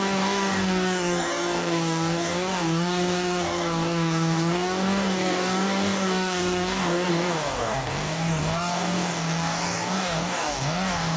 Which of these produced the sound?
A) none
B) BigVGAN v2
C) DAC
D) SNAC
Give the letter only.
C